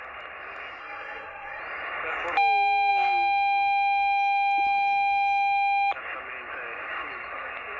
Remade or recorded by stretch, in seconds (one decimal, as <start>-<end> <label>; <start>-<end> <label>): 0.0-0.8 recorded; 0.8-1.6 remade; 1.6-7.8 recorded